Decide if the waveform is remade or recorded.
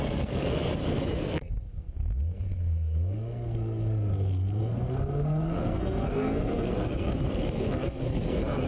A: remade